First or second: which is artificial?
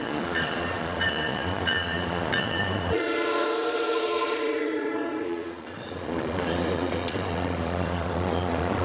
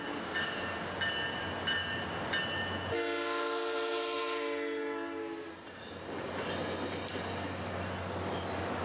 first